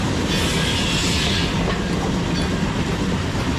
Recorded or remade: recorded